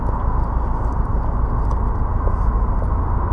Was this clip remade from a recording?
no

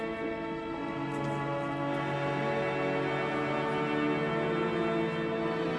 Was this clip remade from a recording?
no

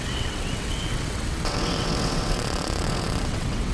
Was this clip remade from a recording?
yes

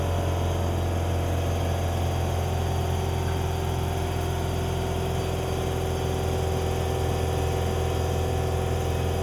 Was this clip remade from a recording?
no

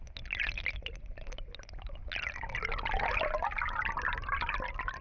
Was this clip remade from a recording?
no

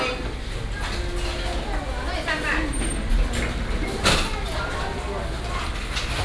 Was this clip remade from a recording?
no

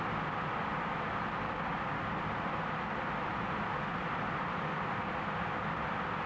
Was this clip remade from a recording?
no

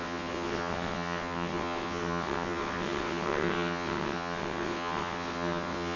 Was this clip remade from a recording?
yes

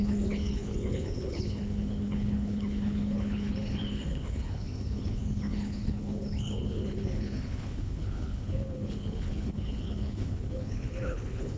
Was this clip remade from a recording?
yes